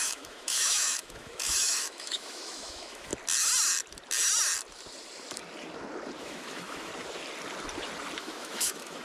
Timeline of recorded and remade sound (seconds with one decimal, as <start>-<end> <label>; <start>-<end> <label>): 0.0-3.1 remade; 3.1-6.2 recorded; 6.2-6.9 remade; 6.9-8.2 recorded; 8.2-9.0 remade